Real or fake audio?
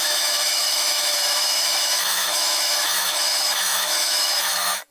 fake